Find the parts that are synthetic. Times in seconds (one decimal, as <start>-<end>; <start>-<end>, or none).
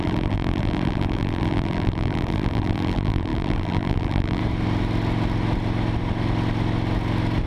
0.0-4.4